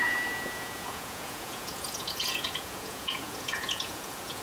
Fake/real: fake